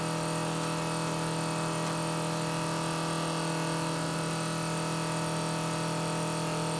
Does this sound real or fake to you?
real